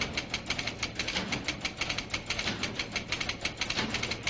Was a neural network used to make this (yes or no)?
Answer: no